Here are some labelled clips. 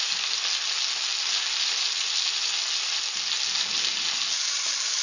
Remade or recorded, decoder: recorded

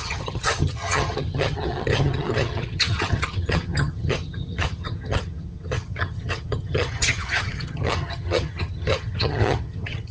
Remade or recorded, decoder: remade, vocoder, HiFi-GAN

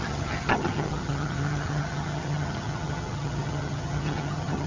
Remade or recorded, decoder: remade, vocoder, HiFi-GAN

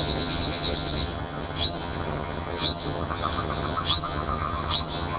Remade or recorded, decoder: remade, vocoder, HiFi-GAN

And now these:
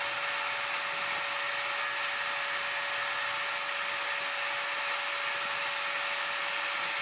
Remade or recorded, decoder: recorded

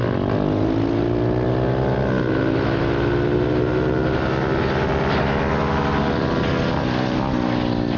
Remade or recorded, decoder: recorded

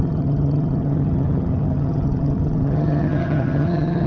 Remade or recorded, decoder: remade, vocoder, HiFi-GAN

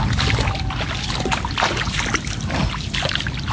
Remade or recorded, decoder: recorded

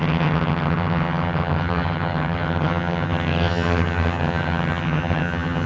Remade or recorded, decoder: remade, vocoder, HiFi-GAN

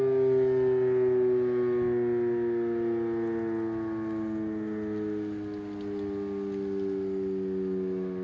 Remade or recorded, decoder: recorded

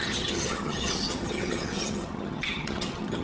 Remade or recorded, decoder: remade, vocoder, HiFi-GAN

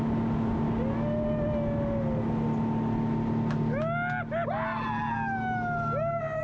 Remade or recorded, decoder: recorded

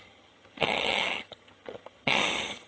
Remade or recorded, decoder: remade, vocoder, HiFi-GAN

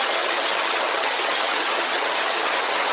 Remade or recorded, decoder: remade, vocoder, HiFi-GAN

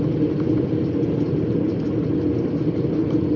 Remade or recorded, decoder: recorded